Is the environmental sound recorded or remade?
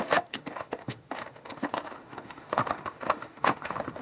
remade